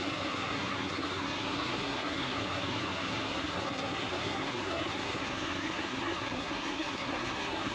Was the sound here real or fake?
fake